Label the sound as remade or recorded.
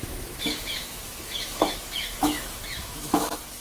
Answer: remade